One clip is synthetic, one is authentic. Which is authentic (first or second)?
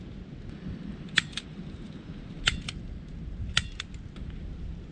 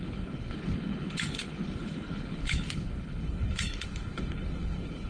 first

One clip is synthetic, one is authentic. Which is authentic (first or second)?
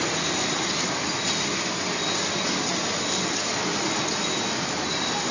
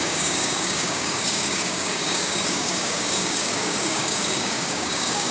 first